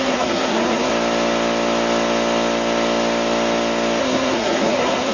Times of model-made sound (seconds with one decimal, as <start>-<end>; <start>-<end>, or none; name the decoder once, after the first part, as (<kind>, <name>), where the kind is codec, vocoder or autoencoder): 0.0-0.9 (codec, SNAC); 4.0-5.1